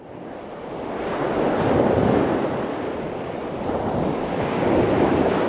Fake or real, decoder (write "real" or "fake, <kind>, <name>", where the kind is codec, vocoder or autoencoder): real